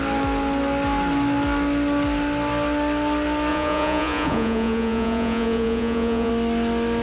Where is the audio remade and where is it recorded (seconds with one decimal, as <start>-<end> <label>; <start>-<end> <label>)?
0.0-3.5 recorded; 3.5-6.3 remade; 6.3-7.0 recorded